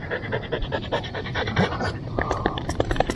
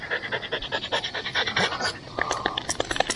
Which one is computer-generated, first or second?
first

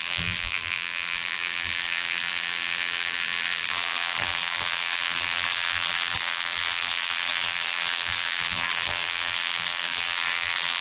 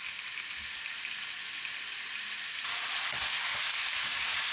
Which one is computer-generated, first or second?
first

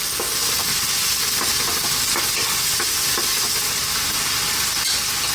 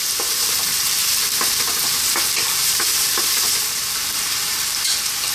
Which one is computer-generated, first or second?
second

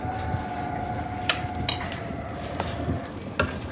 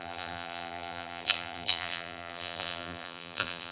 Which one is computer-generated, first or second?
second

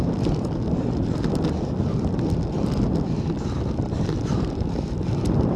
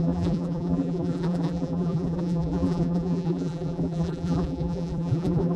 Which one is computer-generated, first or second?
second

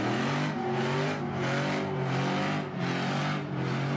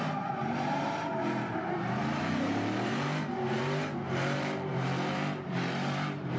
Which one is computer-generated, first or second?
second